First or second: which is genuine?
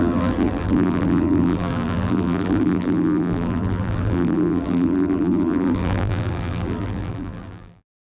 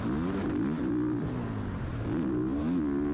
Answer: second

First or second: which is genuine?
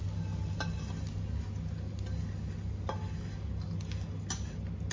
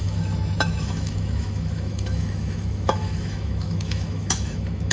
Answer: first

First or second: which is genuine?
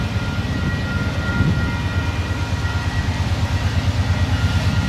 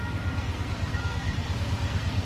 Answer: first